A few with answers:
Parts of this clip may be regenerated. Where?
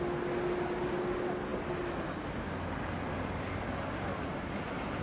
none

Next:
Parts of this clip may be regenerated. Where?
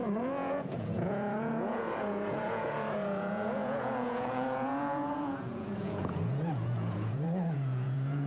0.0-8.3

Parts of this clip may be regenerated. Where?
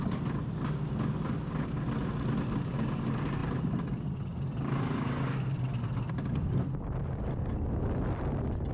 none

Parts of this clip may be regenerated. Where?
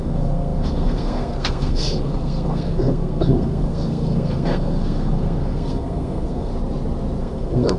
0.0-6.5; 7.2-7.8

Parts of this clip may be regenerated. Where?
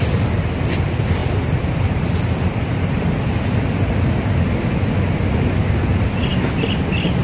none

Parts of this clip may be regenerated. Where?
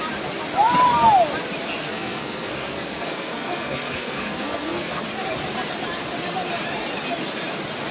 1.8-5.0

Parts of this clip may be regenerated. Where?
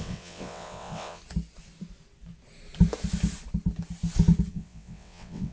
0.0-1.2; 4.5-5.5